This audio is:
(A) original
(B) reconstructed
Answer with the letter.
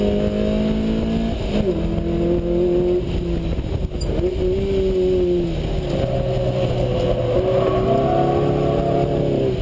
A